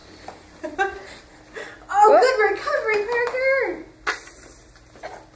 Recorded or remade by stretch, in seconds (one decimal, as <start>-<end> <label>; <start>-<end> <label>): 0.0-5.4 recorded